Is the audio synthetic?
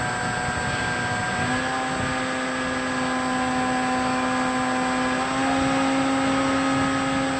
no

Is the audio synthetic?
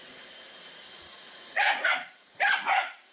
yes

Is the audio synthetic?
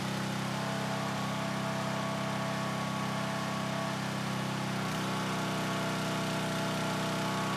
no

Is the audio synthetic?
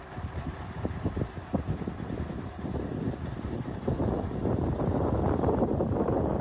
no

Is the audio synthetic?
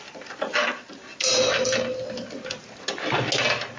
no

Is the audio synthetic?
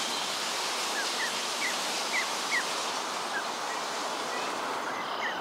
no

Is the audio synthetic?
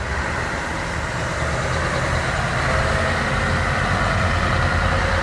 no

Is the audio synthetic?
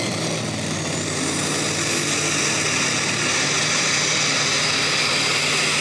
no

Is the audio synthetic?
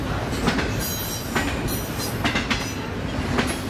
no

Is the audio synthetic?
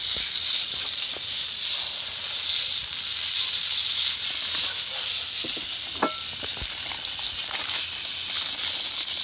no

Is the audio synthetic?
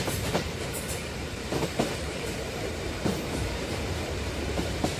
yes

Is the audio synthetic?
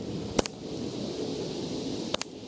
no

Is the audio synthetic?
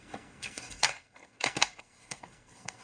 yes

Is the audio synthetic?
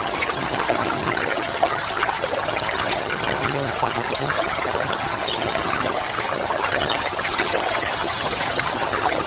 yes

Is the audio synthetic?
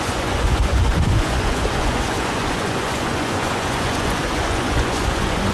yes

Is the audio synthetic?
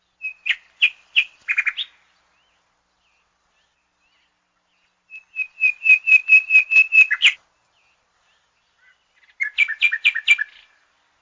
no